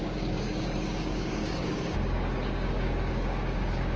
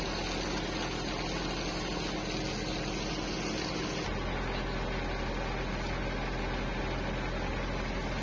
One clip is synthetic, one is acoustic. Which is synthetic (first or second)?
first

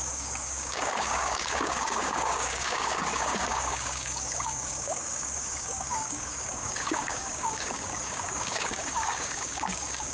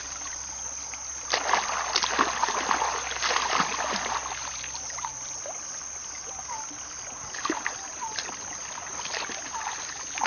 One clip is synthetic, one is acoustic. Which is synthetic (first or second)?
first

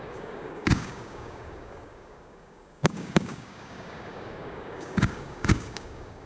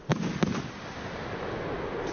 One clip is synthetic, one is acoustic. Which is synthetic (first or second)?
first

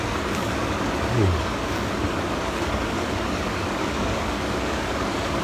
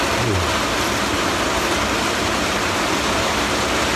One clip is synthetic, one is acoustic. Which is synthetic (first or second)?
first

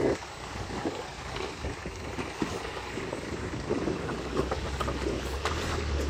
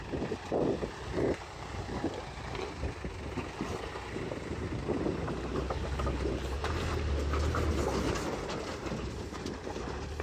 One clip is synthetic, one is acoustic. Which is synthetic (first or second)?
first